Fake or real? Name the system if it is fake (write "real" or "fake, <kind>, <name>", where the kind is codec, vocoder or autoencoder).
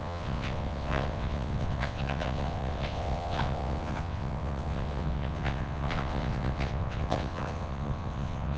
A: fake, vocoder, WaveNeXt